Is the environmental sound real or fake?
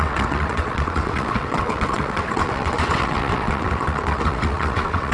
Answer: fake